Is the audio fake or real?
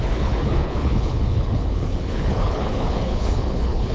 fake